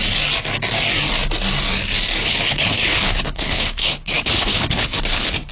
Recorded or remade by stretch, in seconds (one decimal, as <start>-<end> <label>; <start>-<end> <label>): 0.0-2.2 recorded; 2.2-5.5 remade